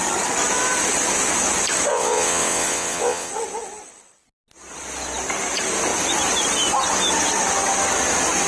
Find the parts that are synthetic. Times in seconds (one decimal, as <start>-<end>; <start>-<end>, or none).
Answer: 1.9-3.3